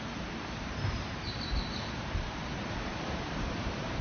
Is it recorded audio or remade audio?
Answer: remade